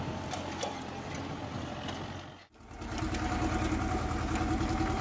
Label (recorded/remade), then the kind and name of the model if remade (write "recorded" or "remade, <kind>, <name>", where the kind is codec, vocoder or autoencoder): recorded